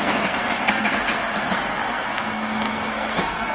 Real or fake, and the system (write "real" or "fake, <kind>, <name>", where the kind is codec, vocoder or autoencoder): fake, codec, SNAC